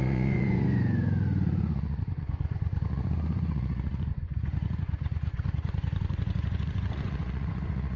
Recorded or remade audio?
remade